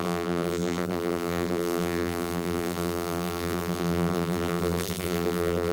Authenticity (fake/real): fake